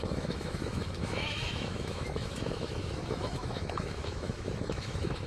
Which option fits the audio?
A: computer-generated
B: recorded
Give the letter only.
A